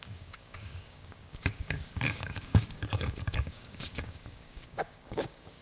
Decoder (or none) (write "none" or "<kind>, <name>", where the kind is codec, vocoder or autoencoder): codec, DAC